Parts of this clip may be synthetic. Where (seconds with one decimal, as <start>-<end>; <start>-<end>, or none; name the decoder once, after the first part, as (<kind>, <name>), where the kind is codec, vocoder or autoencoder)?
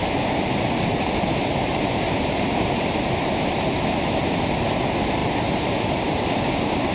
0.0-3.4 (vocoder, BigVGAN v2)